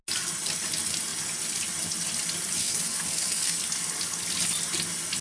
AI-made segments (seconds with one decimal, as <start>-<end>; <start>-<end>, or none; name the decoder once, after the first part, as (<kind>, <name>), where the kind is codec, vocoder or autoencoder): 2.6-3.6 (codec, SNAC)